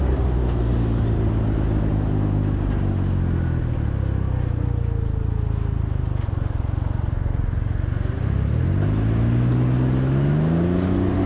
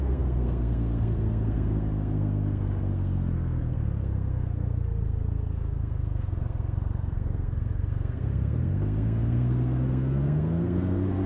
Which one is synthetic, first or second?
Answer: second